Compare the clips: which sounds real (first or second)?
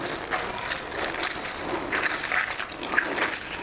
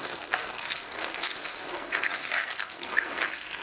first